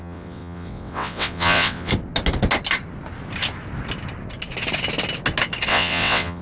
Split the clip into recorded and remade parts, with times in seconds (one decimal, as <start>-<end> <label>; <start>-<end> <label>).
0.0-1.9 remade; 1.9-5.7 recorded; 5.7-6.4 remade

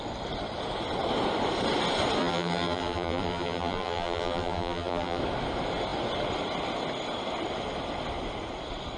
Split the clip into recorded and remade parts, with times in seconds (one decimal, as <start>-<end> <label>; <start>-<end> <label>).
0.0-2.2 recorded; 2.2-5.2 remade; 5.2-9.0 recorded

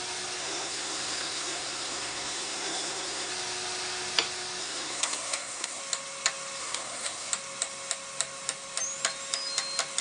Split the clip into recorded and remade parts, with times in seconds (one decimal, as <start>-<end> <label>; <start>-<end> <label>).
0.0-0.4 recorded; 0.4-3.3 remade; 3.3-4.6 recorded; 4.6-5.8 remade; 5.8-6.6 recorded; 6.6-7.3 remade; 7.3-10.0 recorded

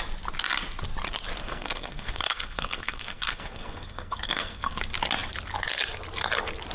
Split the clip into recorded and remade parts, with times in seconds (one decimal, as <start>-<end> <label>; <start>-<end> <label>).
0.0-1.4 recorded; 1.4-4.8 remade; 4.8-6.7 recorded